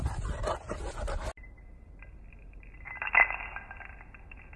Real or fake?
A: real